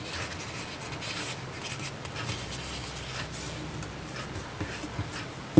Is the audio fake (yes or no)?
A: no